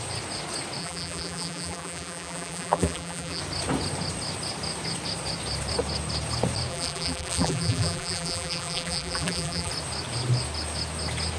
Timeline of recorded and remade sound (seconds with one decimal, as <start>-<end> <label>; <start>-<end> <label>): 0.0-0.8 recorded; 0.8-3.4 remade; 3.4-6.7 recorded; 6.7-9.7 remade; 9.7-11.4 recorded